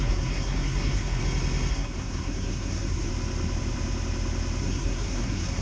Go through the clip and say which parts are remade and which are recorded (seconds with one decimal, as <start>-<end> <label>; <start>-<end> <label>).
0.0-1.2 remade; 1.2-1.7 recorded; 1.7-3.1 remade; 3.1-4.6 recorded; 4.6-5.6 remade